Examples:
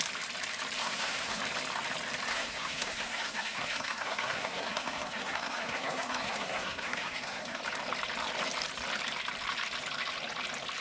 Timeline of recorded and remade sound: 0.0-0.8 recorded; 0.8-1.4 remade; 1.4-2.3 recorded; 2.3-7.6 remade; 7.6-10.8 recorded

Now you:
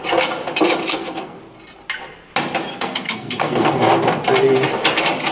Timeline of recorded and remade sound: 0.0-0.9 recorded; 0.9-1.4 remade; 1.4-2.7 recorded; 2.7-3.8 remade; 3.8-5.3 recorded

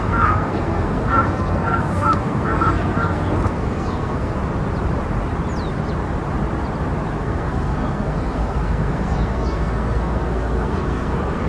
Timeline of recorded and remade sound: 0.0-4.4 remade; 4.4-7.2 recorded; 7.2-11.5 remade

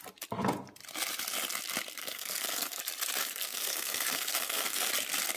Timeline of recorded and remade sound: 0.0-2.0 recorded; 2.0-2.8 remade; 2.8-3.2 recorded; 3.2-4.9 remade; 4.9-5.4 recorded

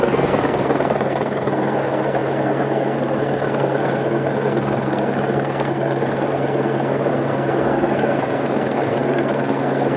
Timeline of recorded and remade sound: 0.0-10.0 remade

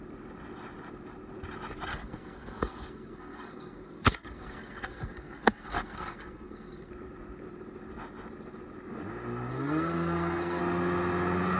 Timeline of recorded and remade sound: 0.0-1.9 recorded; 1.9-6.9 remade; 6.9-9.5 recorded; 9.5-10.6 remade; 10.6-11.6 recorded